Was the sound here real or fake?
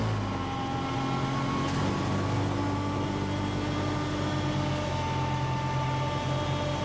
real